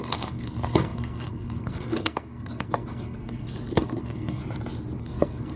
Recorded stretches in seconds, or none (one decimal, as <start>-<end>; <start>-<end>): 4.4-5.0